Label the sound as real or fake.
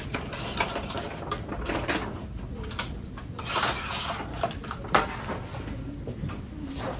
fake